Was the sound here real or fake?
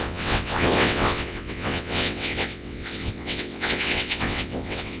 fake